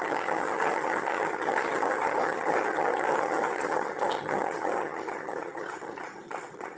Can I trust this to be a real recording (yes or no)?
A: no